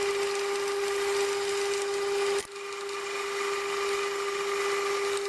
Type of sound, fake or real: real